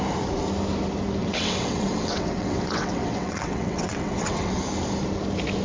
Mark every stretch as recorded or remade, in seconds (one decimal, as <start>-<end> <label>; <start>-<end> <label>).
0.0-1.2 recorded; 1.2-4.6 remade; 4.6-5.6 recorded

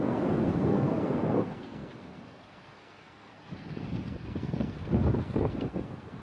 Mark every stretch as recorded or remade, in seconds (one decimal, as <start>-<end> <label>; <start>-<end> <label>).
0.0-6.2 remade

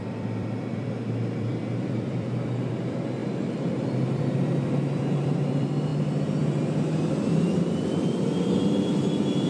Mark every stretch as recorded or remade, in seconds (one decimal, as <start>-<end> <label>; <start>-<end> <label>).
0.0-5.9 remade; 5.9-6.8 recorded; 6.8-9.5 remade

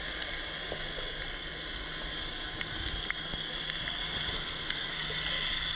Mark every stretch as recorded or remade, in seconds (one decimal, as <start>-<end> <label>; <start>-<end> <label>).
0.0-4.0 recorded; 4.0-4.9 remade; 4.9-5.8 recorded